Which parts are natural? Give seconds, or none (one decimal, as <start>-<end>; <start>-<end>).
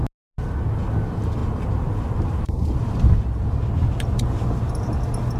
0.0-5.4